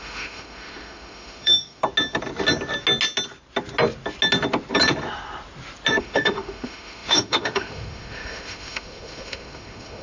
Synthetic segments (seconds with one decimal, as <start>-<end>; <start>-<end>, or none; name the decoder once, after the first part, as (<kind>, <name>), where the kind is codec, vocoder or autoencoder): 0.0-1.8 (autoencoder, DAC-VAE); 6.0-10.0